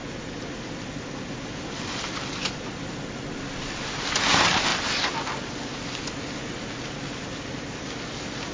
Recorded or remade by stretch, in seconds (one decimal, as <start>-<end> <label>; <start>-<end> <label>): 0.0-8.5 recorded